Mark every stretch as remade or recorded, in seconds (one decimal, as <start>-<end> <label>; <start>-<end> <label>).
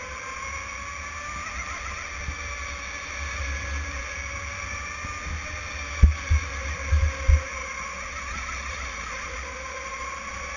0.0-7.6 recorded; 7.6-10.6 remade